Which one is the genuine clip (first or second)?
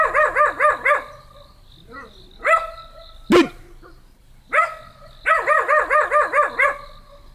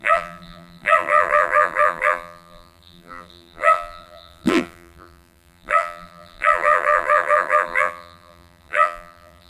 first